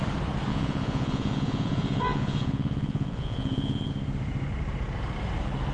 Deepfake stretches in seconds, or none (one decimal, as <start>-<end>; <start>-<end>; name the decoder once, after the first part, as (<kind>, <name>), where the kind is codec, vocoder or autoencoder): 0.5-3.9 (vocoder, Vocos)